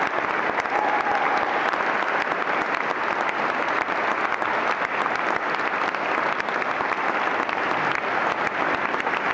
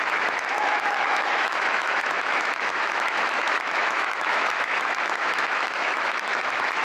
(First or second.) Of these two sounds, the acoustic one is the first